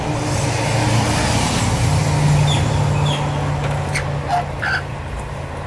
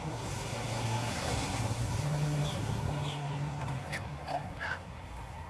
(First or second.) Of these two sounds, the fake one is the second